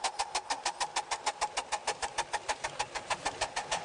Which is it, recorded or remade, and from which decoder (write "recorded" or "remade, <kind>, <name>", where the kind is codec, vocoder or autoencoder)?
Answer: recorded